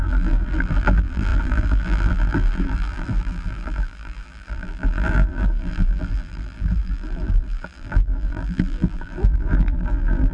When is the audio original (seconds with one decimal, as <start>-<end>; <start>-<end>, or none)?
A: none